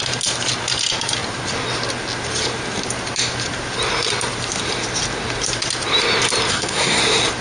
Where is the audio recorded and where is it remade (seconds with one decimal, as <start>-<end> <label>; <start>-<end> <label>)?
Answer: 0.0-6.5 recorded; 6.5-7.0 remade; 7.0-7.4 recorded